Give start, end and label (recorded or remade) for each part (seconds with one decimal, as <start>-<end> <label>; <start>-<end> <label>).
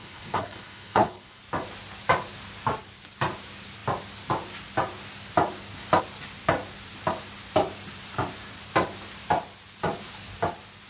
0.0-1.4 remade; 1.4-10.9 recorded